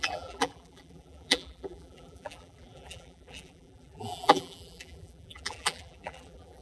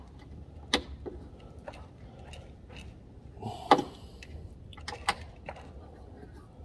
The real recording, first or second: second